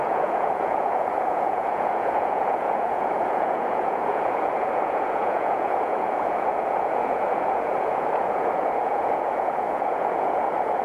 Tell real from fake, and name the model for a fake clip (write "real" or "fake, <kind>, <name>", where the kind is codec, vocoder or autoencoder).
fake, vocoder, Vocos